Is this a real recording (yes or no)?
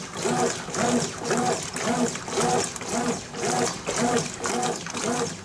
yes